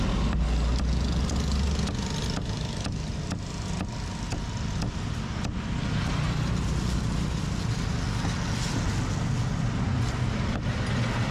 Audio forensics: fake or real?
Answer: real